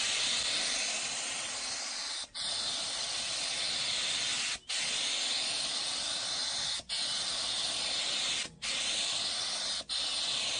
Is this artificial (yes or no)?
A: no